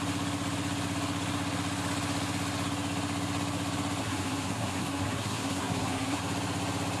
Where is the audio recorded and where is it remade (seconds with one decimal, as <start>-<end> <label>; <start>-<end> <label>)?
0.0-4.0 recorded; 4.0-6.2 remade; 6.2-7.0 recorded